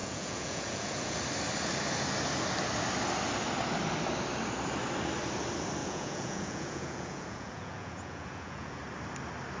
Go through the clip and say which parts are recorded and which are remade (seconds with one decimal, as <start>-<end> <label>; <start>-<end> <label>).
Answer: 0.0-1.2 remade; 1.2-5.8 recorded; 5.8-8.8 remade; 8.8-9.6 recorded